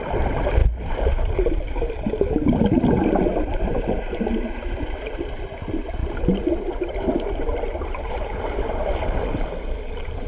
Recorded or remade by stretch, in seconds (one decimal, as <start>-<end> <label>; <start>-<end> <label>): 0.0-6.0 recorded; 6.0-8.4 remade; 8.4-10.3 recorded